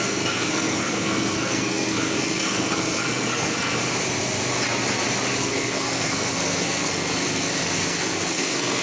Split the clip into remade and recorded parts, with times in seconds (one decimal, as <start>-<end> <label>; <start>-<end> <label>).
0.0-3.8 remade; 3.8-5.4 recorded; 5.4-8.8 remade